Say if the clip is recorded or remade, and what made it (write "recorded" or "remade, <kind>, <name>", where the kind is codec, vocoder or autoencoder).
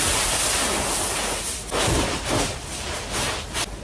recorded